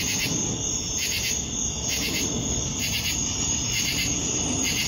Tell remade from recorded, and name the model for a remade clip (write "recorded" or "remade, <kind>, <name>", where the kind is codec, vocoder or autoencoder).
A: recorded